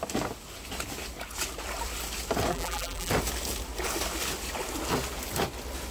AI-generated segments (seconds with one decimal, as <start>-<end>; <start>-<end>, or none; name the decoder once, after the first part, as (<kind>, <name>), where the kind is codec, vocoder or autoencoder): 2.5-3.1 (vocoder, BigVGAN v2)